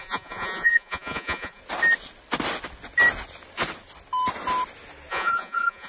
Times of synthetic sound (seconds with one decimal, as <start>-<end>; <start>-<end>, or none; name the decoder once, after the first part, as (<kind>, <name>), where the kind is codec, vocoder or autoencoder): 0.0-1.6 (vocoder, Vocos); 5.1-5.9